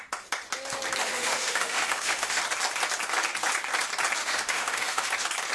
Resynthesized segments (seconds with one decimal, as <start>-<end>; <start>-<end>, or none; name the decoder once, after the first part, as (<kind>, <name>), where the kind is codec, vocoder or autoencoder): 1.0-2.4 (autoencoder, DAC-VAE); 4.2-5.1